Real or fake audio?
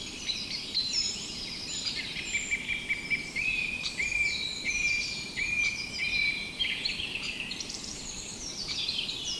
fake